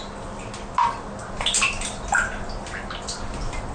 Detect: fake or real real